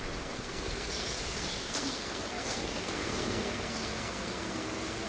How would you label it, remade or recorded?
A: remade